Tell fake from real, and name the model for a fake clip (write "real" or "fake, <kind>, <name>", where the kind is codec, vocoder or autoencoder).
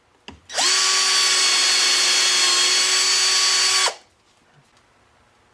real